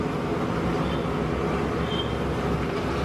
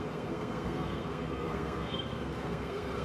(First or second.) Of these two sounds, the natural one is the first